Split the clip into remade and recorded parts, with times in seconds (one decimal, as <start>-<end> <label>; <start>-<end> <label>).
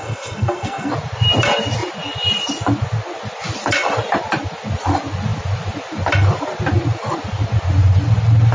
0.0-0.9 remade; 0.9-8.5 recorded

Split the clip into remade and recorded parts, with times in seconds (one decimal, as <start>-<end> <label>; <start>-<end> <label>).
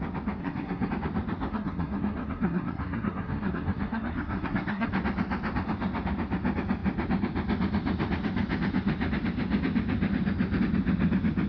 0.0-0.4 recorded; 0.4-0.9 remade; 0.9-1.5 recorded; 1.5-4.9 remade; 4.9-11.5 recorded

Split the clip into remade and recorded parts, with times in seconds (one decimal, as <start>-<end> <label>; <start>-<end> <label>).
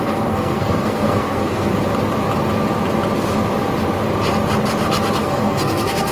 0.0-1.7 remade; 1.7-5.2 recorded; 5.2-6.1 remade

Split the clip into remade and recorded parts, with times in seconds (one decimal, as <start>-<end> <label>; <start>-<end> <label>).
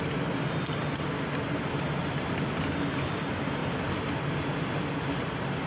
0.0-5.7 recorded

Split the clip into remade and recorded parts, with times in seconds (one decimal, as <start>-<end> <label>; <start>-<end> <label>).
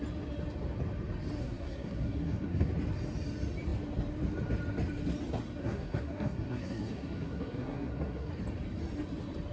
0.0-1.4 recorded; 1.4-2.7 remade; 2.7-5.6 recorded; 5.6-8.3 remade; 8.3-9.5 recorded